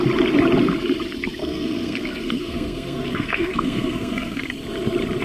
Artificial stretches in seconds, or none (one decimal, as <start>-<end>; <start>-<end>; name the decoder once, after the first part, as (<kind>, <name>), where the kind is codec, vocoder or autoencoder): 1.4-4.5 (codec, SNAC)